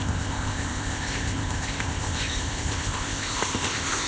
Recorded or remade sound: remade